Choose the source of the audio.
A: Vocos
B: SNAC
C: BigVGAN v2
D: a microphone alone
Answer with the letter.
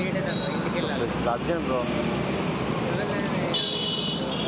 D